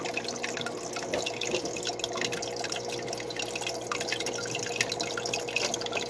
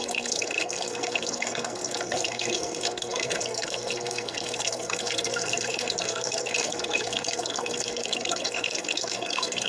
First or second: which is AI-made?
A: second